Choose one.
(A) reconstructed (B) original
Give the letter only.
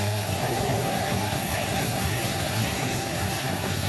A